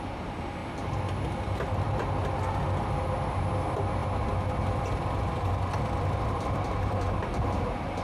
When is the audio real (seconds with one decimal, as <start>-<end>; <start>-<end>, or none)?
0.0-8.0